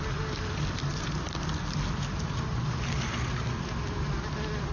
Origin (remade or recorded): recorded